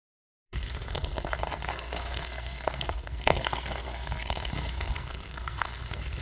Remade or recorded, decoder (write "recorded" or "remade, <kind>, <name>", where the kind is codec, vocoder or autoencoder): remade, codec, SNAC